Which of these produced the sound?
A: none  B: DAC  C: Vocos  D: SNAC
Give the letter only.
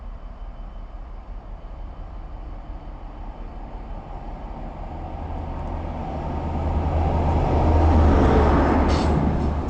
A